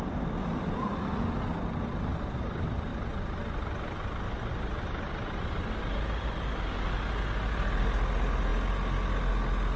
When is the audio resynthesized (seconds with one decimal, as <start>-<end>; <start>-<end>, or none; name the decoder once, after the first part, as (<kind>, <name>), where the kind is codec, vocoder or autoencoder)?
none